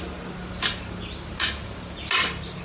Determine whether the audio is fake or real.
real